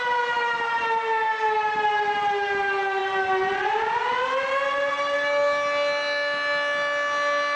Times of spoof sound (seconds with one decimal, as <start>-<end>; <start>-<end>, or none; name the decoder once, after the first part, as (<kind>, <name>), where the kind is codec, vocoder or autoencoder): none